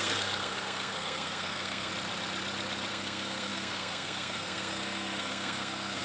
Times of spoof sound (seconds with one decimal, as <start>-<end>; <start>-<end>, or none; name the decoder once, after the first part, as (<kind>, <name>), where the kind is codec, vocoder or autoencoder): 0.0-1.9 (codec, SNAC); 2.9-6.0